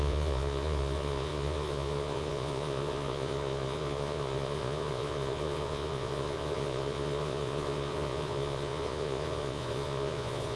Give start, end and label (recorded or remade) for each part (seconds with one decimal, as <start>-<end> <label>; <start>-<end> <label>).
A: 0.0-10.6 remade